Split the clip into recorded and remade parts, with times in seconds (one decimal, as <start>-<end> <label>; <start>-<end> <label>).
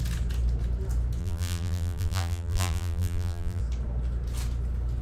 0.0-1.2 recorded; 1.2-3.6 remade; 3.6-5.0 recorded